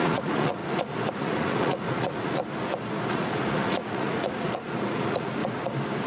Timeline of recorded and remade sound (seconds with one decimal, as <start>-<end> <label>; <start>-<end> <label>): 0.0-0.6 remade; 0.6-1.1 recorded; 1.1-2.4 remade; 2.4-3.1 recorded; 3.1-5.4 remade; 5.4-6.1 recorded